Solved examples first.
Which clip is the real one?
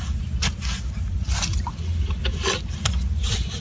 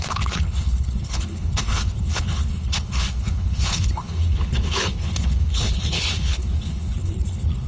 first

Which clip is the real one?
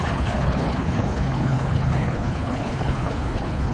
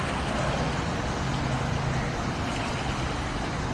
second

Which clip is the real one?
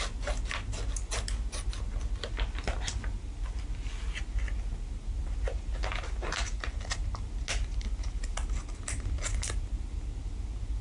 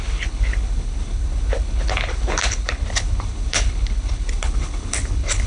first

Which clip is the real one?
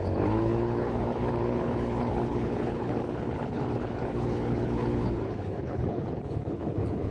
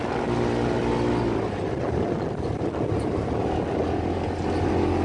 second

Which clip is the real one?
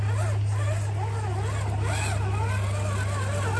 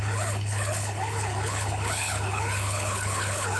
first